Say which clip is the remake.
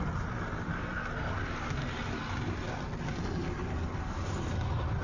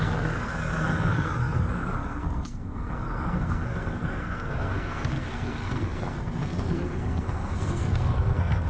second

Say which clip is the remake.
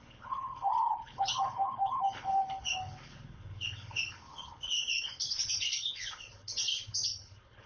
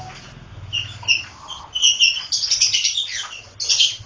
first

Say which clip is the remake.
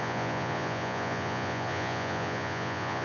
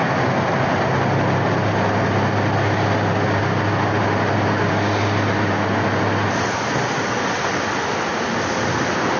first